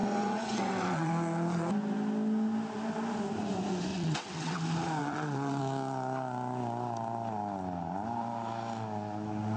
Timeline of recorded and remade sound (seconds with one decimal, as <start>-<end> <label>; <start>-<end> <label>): 0.0-1.1 remade; 1.1-3.9 recorded; 3.9-4.6 remade; 4.6-5.0 recorded; 5.0-5.6 remade; 5.6-9.6 recorded